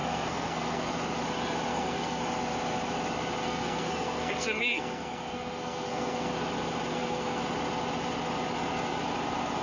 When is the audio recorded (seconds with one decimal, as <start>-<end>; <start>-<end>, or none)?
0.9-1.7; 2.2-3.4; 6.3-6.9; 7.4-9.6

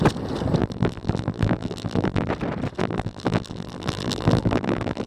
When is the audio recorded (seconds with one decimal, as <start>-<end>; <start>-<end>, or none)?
0.0-0.6; 2.3-2.8

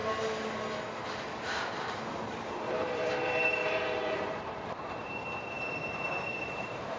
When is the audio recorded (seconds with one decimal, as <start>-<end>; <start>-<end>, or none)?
0.0-1.4

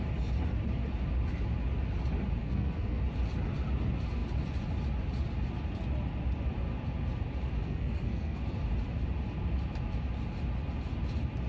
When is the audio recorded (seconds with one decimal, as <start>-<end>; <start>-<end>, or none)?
0.0-2.4; 3.0-7.6; 8.4-11.5

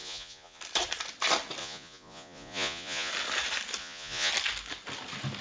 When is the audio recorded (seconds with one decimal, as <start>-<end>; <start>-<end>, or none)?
0.6-1.6; 3.1-3.8; 4.3-5.4

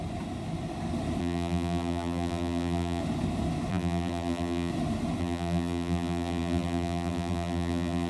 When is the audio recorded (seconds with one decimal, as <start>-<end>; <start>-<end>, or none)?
0.0-1.2; 3.0-3.7; 4.7-5.2

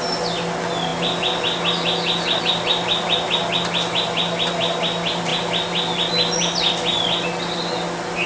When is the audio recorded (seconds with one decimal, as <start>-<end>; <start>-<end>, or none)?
0.0-8.3

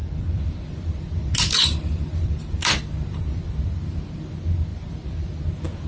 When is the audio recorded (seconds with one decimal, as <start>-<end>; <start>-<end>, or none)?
3.5-4.7; 5.4-5.9